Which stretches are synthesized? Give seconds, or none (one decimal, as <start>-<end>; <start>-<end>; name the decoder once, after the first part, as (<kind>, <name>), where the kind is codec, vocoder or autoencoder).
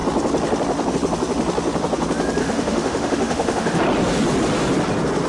2.4-3.8 (autoencoder, DAC-VAE)